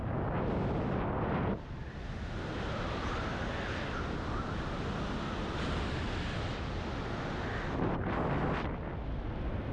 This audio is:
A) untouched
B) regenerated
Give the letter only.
A